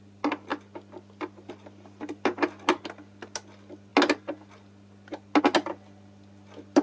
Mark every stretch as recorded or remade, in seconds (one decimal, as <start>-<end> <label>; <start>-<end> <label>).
0.0-6.8 recorded